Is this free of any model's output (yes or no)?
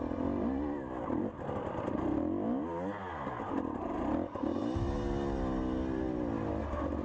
yes